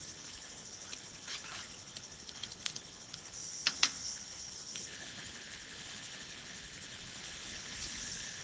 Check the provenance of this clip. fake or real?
fake